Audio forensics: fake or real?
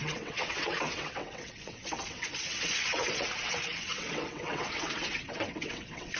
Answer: fake